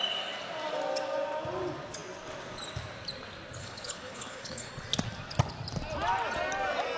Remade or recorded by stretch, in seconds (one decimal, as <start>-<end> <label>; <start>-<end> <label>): 0.0-3.6 recorded; 3.6-4.7 remade; 4.7-7.0 recorded